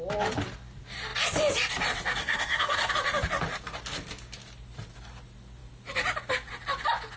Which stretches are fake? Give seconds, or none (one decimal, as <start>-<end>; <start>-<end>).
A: 2.2-2.9